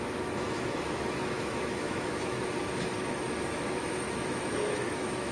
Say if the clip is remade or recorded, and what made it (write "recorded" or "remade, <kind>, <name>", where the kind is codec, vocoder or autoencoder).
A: remade, autoencoder, DAC-VAE